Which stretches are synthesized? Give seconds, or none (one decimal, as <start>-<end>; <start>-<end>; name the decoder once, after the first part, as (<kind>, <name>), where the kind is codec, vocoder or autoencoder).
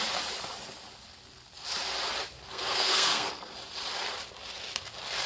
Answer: 2.5-3.3 (codec, SNAC)